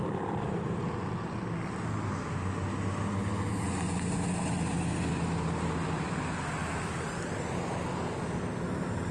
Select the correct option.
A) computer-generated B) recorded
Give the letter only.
B